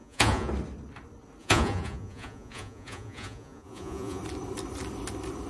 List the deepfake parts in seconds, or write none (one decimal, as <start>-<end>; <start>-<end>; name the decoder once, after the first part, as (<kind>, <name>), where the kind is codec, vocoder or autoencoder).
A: 0.0-0.5 (vocoder, Vocos); 1.4-4.2